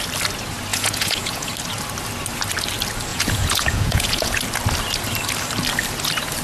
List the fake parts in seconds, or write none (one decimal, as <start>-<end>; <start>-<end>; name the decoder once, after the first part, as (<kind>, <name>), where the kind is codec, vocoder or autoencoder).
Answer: 0.7-1.5 (vocoder, Vocos); 3.1-4.4